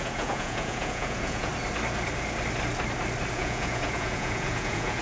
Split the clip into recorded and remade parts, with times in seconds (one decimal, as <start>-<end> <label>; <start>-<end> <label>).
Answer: 0.0-1.5 remade; 1.5-3.3 recorded; 3.3-5.0 remade